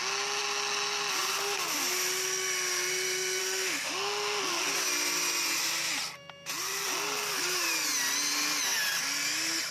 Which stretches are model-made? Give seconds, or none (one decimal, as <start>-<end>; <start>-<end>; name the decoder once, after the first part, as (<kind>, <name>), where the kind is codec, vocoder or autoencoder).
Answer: 3.4-4.4 (autoencoder, DAC-VAE)